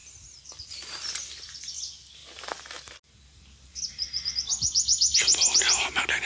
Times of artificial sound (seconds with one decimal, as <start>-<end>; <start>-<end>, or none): 0.0-0.8; 3.3-3.9